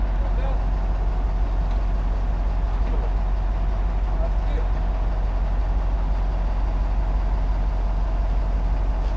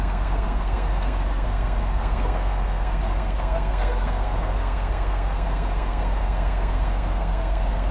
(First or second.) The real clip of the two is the first